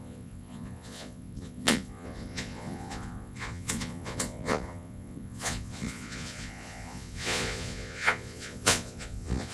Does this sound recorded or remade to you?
remade